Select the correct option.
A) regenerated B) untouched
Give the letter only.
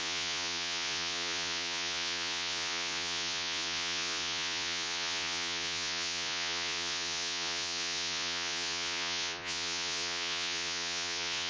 A